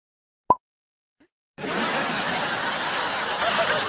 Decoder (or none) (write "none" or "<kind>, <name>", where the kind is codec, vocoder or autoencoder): none